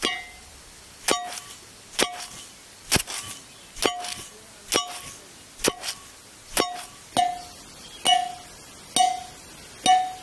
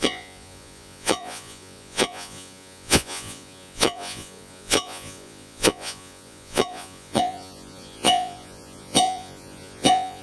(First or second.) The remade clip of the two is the second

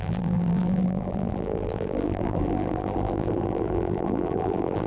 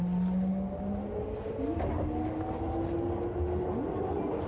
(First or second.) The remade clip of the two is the first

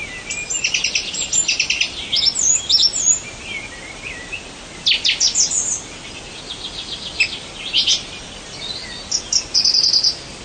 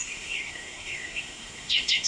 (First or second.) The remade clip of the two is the second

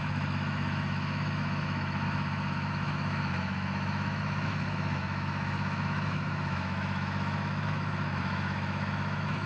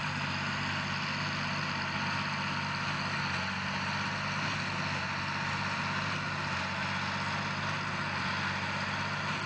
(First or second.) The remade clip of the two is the first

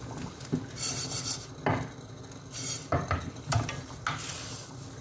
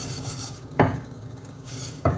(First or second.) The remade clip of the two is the second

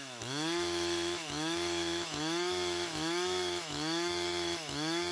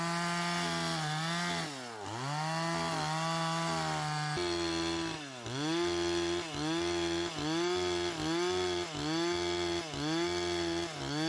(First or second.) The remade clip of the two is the first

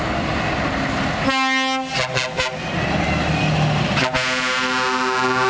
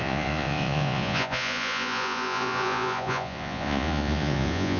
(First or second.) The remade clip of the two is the second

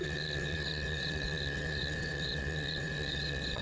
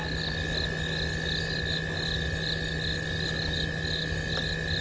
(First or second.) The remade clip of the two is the first